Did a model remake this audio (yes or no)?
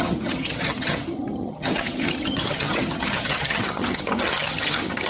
yes